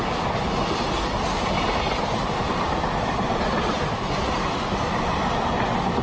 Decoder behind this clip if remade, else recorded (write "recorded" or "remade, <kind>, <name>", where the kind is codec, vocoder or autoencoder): recorded